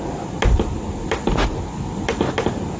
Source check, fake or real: fake